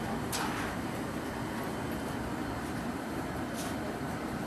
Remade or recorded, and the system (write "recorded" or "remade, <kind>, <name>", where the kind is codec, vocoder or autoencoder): remade, vocoder, BigVGAN v2